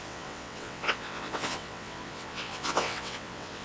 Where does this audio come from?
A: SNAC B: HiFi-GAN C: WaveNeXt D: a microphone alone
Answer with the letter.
C